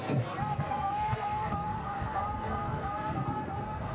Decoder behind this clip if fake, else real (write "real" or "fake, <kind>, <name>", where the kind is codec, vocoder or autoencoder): fake, codec, SNAC